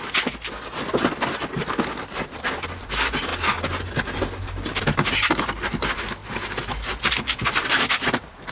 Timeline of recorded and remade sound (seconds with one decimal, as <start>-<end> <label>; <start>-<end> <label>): 0.0-6.2 recorded; 6.2-7.1 remade; 7.1-8.5 recorded